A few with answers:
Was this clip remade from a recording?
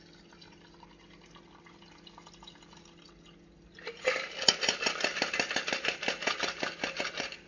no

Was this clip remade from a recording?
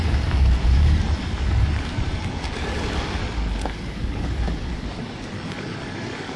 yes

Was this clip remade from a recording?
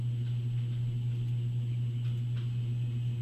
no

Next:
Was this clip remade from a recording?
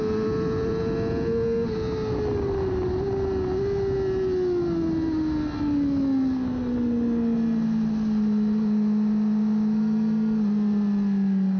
no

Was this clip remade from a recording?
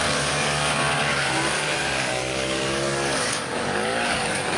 yes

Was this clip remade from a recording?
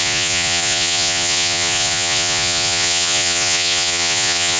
yes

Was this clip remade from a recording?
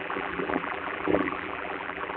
yes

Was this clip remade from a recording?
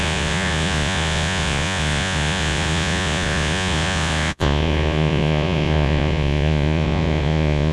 yes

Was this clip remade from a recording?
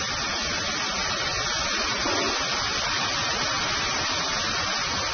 no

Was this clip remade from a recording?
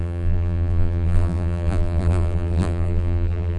yes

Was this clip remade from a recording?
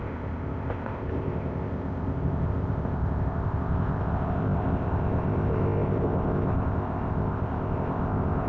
yes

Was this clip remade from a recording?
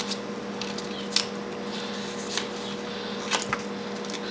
no